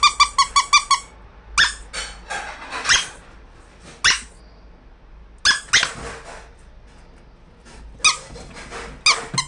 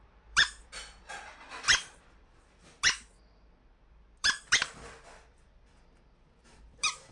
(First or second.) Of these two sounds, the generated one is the second